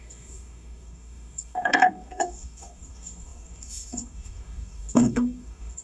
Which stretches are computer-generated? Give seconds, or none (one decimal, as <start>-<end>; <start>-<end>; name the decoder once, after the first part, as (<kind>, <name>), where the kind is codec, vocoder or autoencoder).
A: 0.0-5.8 (codec, DAC)